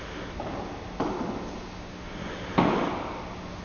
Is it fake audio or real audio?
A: real